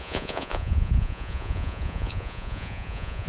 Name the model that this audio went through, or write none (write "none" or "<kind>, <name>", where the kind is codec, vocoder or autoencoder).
vocoder, Vocos